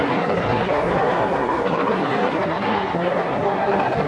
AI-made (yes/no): yes